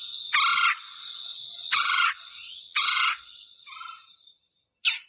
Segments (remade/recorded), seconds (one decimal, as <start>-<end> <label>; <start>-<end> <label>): 0.0-0.5 recorded; 0.5-3.6 remade; 3.6-5.1 recorded